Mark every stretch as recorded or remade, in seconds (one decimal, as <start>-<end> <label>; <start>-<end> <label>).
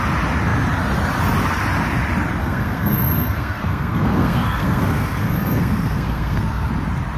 0.0-2.4 recorded; 2.4-6.7 remade; 6.7-7.2 recorded